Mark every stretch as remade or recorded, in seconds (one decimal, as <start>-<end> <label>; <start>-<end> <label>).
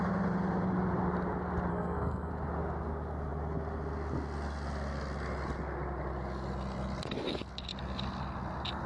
0.0-1.7 recorded; 1.7-2.3 remade; 2.3-8.9 recorded